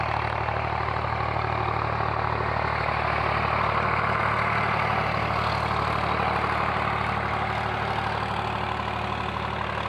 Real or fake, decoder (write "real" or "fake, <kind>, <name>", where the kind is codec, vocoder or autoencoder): real